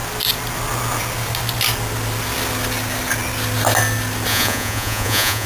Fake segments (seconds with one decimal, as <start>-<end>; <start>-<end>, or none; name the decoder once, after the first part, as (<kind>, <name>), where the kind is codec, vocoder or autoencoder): 4.3-5.5 (vocoder, Vocos)